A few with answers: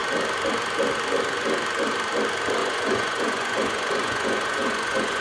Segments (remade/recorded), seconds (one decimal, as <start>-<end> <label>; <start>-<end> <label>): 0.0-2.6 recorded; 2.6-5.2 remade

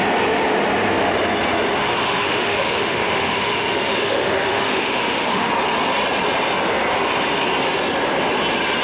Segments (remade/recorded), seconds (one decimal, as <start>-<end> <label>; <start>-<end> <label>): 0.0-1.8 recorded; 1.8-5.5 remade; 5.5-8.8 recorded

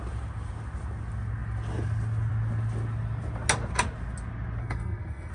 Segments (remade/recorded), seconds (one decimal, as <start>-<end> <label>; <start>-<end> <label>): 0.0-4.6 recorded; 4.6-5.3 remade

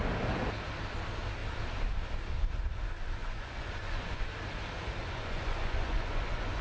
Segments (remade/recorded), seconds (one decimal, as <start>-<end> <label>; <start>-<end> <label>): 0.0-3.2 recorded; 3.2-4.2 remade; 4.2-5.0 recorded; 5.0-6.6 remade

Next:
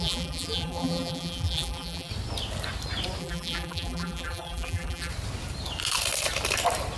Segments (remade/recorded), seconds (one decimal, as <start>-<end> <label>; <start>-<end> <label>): 0.0-2.1 remade; 2.1-3.2 recorded; 3.2-5.1 remade; 5.1-7.0 recorded

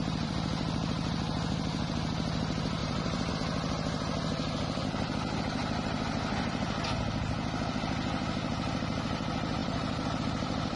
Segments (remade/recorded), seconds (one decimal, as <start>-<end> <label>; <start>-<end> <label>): 0.0-2.8 recorded; 2.8-3.3 remade; 3.3-9.6 recorded; 9.6-10.2 remade; 10.2-10.8 recorded

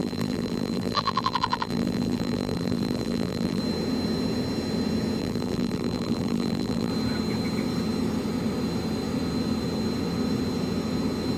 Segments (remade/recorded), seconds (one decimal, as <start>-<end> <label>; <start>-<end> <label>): 0.0-3.6 remade; 3.6-5.2 recorded; 5.2-6.9 remade; 6.9-11.4 recorded